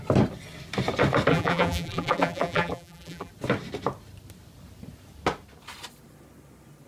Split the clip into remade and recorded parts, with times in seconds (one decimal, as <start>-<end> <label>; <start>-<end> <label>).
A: 0.0-1.3 recorded; 1.3-3.3 remade; 3.3-6.9 recorded